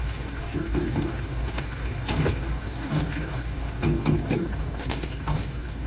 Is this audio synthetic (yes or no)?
yes